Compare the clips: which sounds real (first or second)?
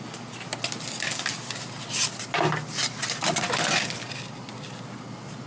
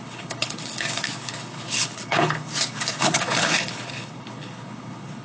first